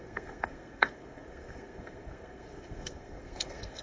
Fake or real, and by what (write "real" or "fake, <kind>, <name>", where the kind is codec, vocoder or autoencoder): fake, codec, SNAC